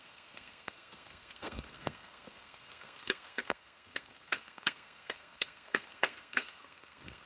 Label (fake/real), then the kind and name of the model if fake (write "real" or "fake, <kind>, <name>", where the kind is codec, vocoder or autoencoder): fake, codec, SNAC